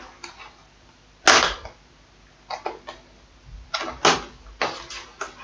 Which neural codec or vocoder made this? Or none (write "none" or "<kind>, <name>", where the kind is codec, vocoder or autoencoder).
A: none